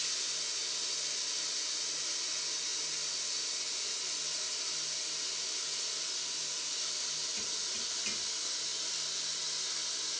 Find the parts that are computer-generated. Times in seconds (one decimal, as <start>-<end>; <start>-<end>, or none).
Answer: none